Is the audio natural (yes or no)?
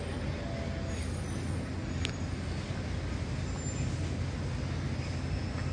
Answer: yes